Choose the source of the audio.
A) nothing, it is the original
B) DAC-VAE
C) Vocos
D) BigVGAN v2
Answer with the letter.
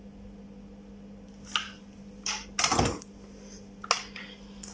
A